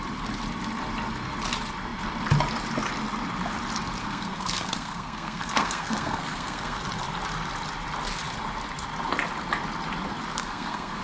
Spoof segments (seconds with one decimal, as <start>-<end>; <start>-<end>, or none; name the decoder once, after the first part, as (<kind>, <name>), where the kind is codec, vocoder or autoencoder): 4.0-6.8 (codec, SNAC); 10.4-11.0